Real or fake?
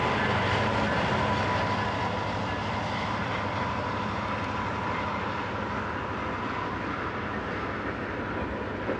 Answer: real